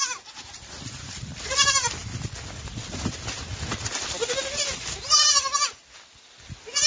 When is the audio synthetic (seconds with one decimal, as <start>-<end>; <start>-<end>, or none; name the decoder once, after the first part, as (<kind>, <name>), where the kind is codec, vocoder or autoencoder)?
none